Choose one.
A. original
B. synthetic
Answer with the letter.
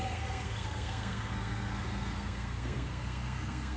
B